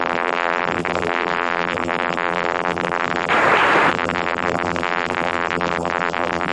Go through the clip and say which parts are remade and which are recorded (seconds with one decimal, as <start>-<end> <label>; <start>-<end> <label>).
0.0-3.3 remade; 3.3-3.9 recorded; 3.9-6.5 remade